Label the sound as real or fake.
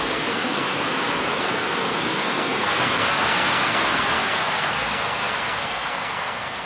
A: fake